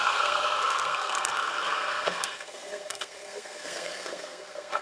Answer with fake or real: fake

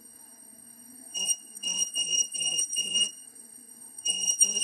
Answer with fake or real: fake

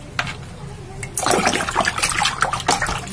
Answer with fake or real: real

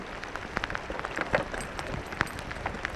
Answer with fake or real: real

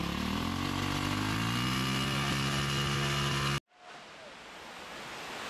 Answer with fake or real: real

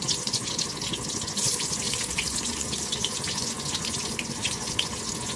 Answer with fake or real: fake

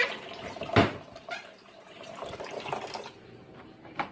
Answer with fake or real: fake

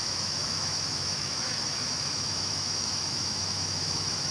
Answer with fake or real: fake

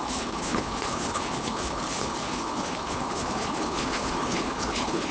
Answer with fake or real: fake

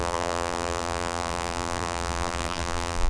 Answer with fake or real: fake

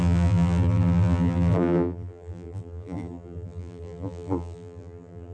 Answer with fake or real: fake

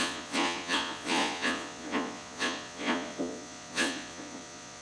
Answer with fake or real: fake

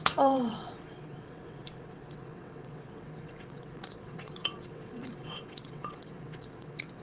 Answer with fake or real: fake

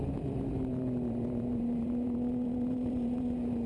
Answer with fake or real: fake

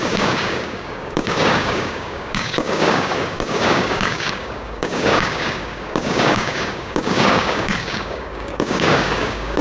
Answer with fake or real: fake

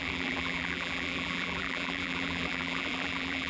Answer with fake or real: fake